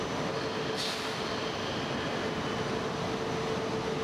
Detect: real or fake real